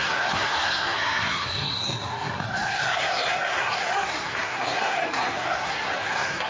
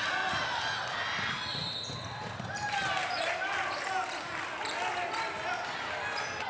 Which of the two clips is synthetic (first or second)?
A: first